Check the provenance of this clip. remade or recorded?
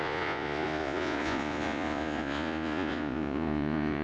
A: remade